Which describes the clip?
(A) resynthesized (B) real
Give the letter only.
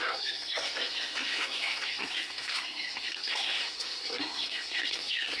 A